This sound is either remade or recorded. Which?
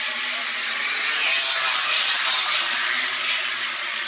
remade